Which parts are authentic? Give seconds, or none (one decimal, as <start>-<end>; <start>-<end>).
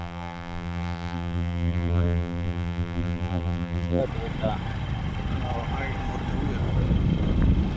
4.0-7.8